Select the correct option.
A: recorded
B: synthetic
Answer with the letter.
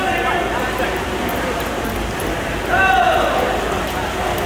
A